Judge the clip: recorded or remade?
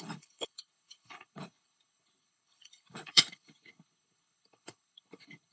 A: remade